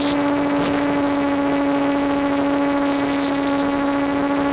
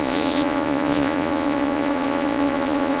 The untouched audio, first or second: first